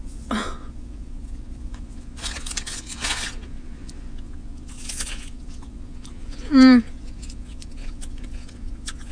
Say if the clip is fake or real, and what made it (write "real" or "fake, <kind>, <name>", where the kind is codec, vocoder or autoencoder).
fake, vocoder, Vocos